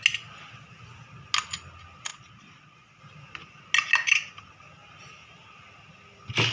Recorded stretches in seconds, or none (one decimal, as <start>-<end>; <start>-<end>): 0.0-2.1; 3.0-6.5